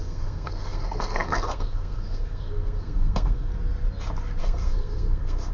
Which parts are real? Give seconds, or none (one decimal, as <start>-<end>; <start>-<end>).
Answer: 3.5-4.4

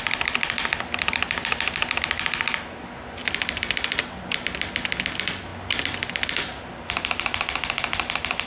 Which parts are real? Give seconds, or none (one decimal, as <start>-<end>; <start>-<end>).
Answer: 0.0-8.5

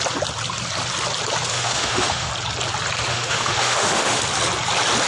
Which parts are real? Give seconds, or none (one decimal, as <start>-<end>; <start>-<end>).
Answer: 0.0-1.5; 2.3-3.1; 4.2-5.1